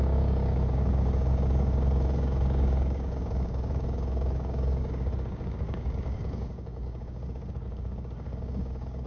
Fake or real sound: fake